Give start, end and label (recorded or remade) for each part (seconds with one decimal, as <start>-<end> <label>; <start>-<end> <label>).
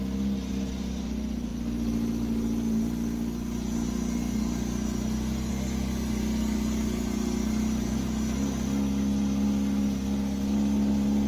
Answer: 0.0-11.3 recorded